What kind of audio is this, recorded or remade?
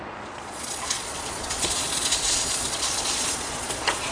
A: remade